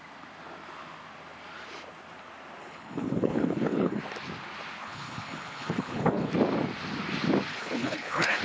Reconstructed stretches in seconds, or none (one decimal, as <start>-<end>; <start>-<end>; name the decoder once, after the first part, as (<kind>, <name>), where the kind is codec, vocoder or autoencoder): 2.6-4.0 (codec, HILCodec); 4.8-6.3; 7.5-8.4